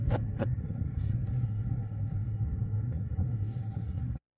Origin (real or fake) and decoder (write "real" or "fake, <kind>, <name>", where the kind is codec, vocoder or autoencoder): fake, codec, SNAC